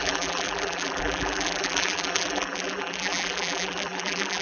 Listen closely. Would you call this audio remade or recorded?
remade